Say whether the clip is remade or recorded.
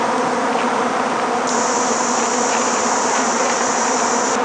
recorded